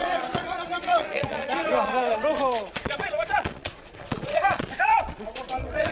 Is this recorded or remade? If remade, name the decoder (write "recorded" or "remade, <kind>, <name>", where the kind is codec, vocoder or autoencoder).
remade, vocoder, Vocos